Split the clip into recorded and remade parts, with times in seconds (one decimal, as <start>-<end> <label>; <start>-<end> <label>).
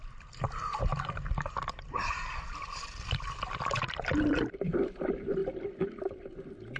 0.0-0.9 recorded; 0.9-5.0 remade; 5.0-6.8 recorded